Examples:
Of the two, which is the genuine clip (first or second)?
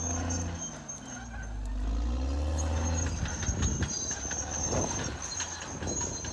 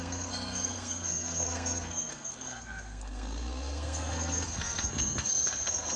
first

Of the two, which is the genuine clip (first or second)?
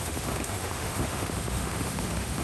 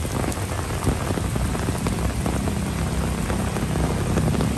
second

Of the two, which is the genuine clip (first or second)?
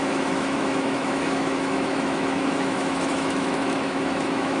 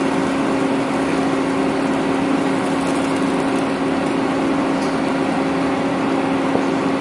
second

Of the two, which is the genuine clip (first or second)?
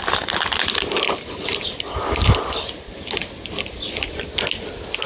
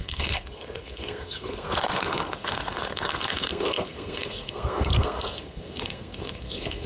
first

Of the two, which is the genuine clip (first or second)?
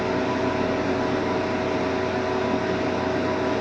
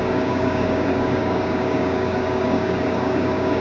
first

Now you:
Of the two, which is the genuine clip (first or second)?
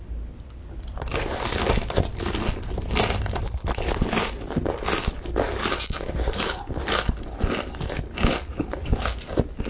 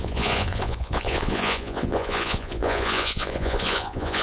first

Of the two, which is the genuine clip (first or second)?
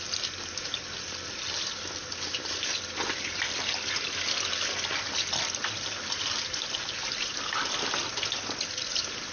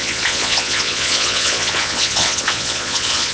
first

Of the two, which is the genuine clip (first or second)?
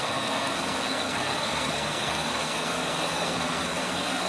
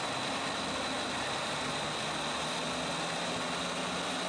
second